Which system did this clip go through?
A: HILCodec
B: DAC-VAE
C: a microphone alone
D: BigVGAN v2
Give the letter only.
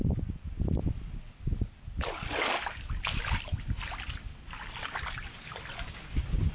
D